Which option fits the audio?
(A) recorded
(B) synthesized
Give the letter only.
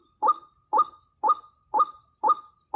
A